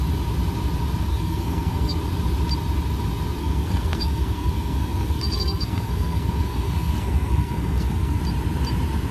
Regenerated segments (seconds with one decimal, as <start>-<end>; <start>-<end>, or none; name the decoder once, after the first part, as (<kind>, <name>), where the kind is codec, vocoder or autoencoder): 1.1-2.0 (codec, SNAC); 3.4-8.2